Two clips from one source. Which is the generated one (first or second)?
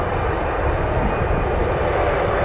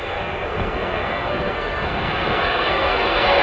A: second